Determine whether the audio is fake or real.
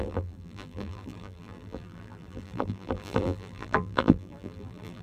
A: fake